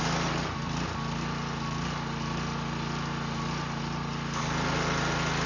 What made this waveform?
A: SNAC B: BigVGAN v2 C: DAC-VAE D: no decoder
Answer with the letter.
D